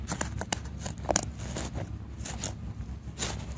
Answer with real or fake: real